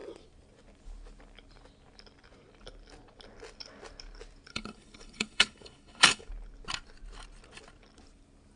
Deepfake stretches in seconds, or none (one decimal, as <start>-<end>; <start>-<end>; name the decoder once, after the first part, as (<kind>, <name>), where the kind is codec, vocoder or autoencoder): 4.5-6.3 (codec, HILCodec)